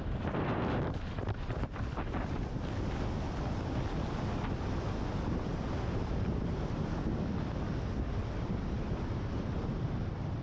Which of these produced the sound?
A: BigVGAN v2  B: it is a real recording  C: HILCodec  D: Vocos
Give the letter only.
B